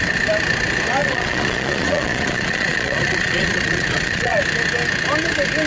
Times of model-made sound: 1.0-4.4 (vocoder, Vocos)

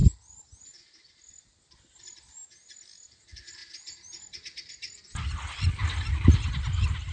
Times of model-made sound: none

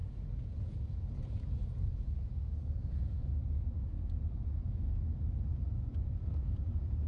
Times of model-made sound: 0.0-7.1 (vocoder, Vocos)

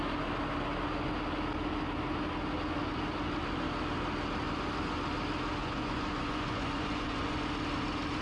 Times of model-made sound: 5.6-7.4 (vocoder, Vocos)

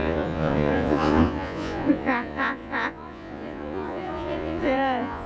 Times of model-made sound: 0.0-5.3 (vocoder, Vocos)